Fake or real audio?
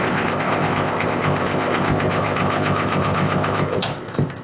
fake